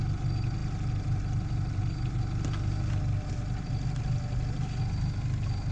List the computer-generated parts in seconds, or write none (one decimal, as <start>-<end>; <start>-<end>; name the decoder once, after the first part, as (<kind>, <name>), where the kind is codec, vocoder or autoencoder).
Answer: none